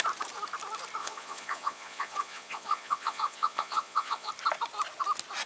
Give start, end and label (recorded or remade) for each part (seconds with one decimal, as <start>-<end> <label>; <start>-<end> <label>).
0.0-1.0 recorded; 1.0-4.3 remade; 4.3-5.5 recorded